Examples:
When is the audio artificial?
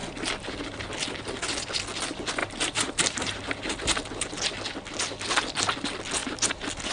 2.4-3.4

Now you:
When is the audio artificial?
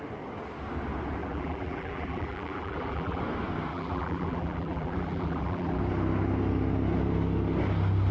1.2-3.2; 3.7-5.8